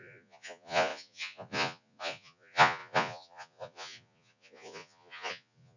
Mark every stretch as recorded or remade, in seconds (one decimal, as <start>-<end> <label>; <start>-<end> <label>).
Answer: 0.0-5.8 remade